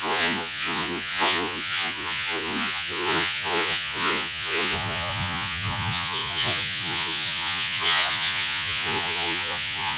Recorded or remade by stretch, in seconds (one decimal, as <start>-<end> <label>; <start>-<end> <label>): 0.0-10.0 remade